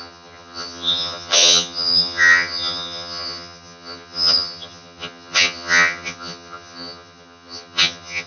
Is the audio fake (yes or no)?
yes